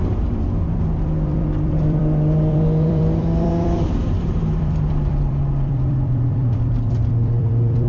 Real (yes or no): no